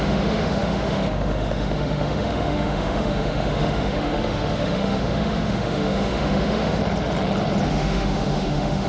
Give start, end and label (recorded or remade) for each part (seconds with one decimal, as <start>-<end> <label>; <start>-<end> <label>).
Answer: 0.0-6.8 remade; 6.8-7.7 recorded; 7.7-8.9 remade